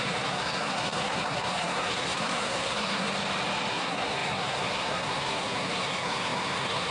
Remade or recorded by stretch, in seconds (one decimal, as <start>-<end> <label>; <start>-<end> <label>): 0.0-3.1 remade; 3.1-3.7 recorded; 3.7-6.9 remade